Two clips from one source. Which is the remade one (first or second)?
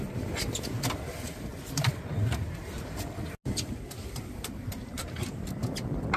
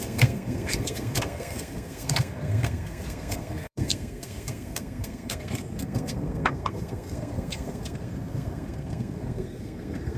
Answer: second